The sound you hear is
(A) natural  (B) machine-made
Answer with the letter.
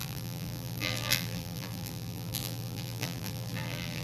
B